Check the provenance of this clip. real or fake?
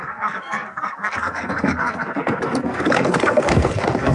fake